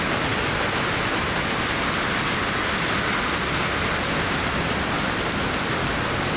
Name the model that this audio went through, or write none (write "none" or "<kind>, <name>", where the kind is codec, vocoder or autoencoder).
none